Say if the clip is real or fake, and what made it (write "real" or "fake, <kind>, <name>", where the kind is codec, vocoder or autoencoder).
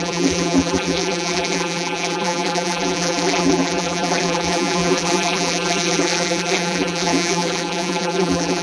fake, vocoder, BigVGAN v2